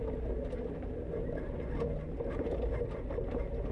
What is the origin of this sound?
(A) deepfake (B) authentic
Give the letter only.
B